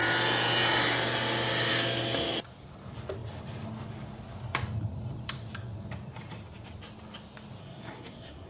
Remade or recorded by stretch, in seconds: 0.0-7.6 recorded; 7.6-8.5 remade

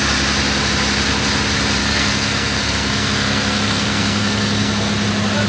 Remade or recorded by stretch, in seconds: 0.0-1.8 recorded; 1.8-4.9 remade; 4.9-5.5 recorded

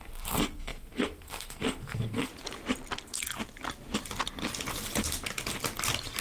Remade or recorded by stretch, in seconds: 0.0-2.3 remade; 2.3-6.2 recorded

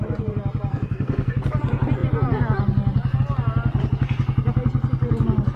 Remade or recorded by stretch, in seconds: 0.0-0.7 recorded; 0.7-1.3 remade; 1.3-5.6 recorded

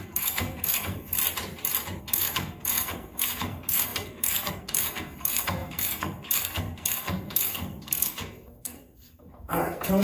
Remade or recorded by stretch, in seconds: 0.0-1.2 remade; 1.2-2.0 recorded; 2.0-10.0 remade